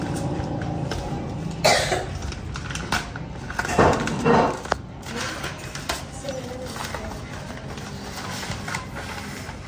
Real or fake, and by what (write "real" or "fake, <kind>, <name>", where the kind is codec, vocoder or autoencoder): fake, vocoder, BigVGAN v2